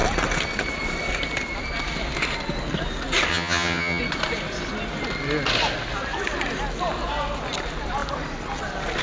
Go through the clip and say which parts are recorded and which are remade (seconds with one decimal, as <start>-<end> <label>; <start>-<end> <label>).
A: 0.0-3.3 recorded; 3.3-4.0 remade; 4.0-9.0 recorded